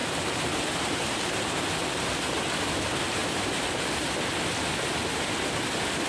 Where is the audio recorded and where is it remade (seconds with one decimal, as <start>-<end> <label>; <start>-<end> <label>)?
0.0-1.2 remade; 1.2-3.2 recorded; 3.2-4.0 remade; 4.0-6.1 recorded